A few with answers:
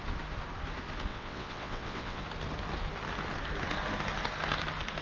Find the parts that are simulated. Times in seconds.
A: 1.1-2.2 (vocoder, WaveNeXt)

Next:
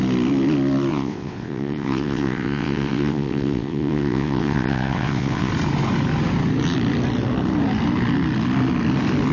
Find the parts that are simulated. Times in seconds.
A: 0.9-5.5 (vocoder, WaveNeXt)

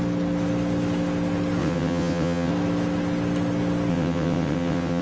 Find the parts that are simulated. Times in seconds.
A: 1.6-2.5 (vocoder, WaveNeXt); 3.9-5.0